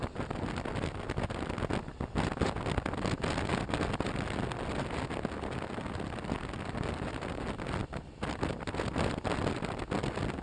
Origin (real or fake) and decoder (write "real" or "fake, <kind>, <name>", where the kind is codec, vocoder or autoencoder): real